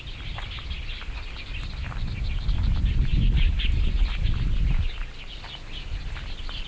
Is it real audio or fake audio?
real